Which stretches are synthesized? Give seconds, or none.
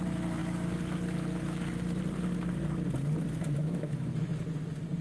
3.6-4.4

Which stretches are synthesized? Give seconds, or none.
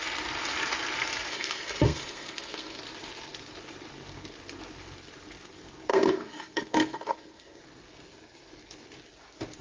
1.3-2.8; 5.9-7.6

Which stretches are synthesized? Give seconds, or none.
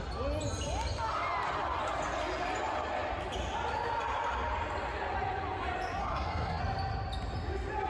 6.0-6.6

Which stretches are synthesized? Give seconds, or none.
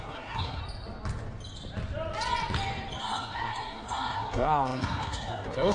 0.0-0.6; 3.0-5.7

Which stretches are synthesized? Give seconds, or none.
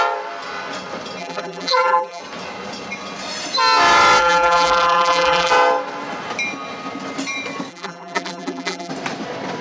1.2-2.2; 4.2-5.5; 7.7-8.9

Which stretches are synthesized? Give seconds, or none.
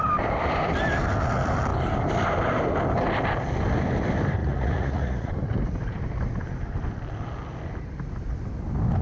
4.4-5.3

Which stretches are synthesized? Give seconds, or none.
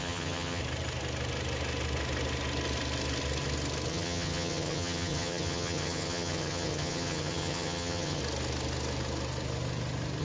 0.0-0.6; 3.9-8.2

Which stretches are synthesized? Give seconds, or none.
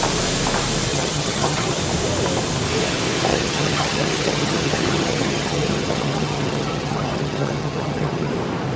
0.9-1.8; 3.3-8.3